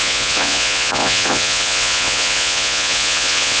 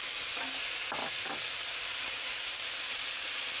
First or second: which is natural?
second